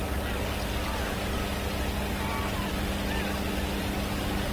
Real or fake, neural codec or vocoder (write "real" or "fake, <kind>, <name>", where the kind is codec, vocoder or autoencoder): real